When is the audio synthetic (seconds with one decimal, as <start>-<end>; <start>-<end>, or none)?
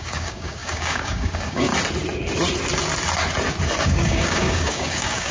0.0-1.7; 3.8-5.3